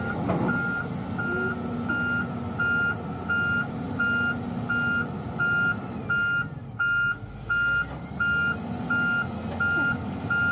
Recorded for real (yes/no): yes